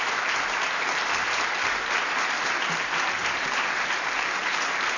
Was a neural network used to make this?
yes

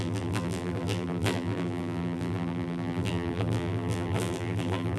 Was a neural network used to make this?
yes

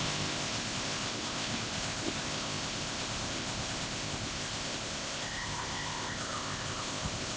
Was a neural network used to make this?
yes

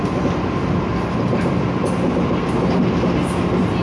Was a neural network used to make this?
no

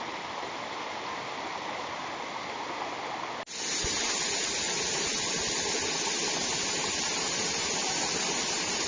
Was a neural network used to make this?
no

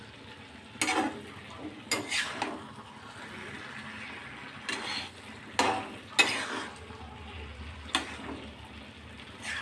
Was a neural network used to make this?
no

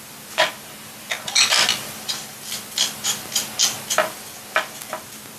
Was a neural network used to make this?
no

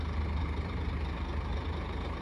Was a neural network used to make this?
yes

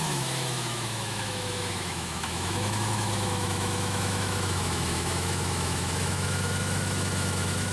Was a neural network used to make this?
yes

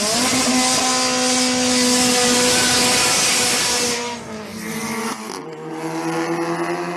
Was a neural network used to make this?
no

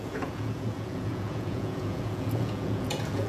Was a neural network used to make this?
yes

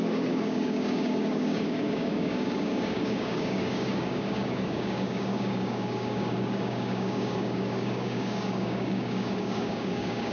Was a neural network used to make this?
yes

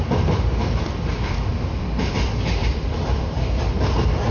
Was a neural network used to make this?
yes